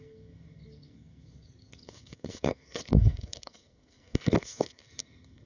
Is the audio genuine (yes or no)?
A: no